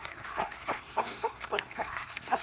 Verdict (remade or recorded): remade